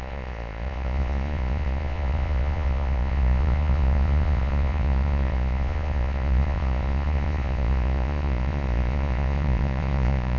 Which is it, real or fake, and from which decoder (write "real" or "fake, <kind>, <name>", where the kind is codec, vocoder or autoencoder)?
fake, vocoder, Vocos